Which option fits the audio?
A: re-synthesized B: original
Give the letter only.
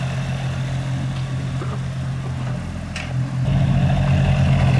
B